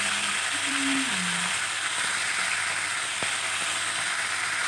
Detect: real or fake real